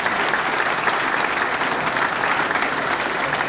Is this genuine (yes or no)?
no